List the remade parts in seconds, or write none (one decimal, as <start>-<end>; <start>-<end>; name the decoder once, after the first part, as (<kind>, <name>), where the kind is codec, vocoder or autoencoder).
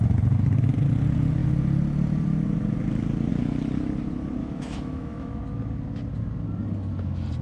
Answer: 4.4-5.4 (autoencoder, DAC-VAE)